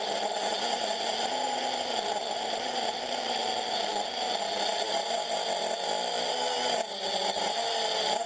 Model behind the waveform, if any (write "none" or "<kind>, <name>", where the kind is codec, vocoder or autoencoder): none